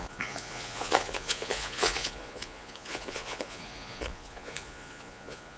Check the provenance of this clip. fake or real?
fake